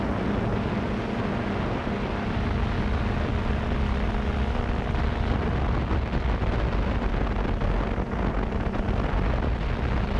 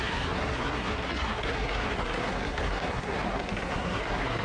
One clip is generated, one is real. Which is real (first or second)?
first